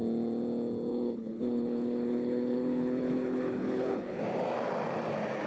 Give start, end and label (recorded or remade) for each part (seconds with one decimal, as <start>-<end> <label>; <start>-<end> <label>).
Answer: 0.0-0.9 recorded; 0.9-4.2 remade; 4.2-5.5 recorded